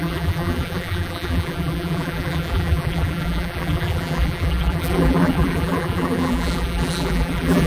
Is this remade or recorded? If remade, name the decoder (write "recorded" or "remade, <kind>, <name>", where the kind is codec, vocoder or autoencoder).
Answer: remade, vocoder, BigVGAN v2